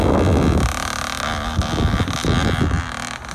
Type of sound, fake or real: real